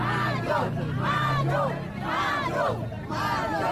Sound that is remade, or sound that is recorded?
recorded